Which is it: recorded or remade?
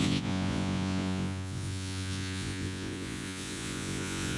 remade